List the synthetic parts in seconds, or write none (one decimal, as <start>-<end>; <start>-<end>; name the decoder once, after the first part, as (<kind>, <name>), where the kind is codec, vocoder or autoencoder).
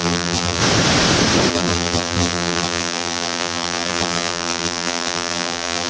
0.0-0.6 (vocoder, BigVGAN v2); 1.5-5.9